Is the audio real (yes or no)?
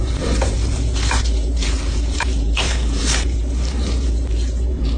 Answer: no